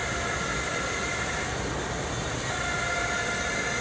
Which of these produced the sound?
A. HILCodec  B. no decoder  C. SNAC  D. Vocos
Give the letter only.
B